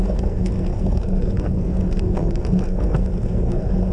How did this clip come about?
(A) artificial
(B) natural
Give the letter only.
A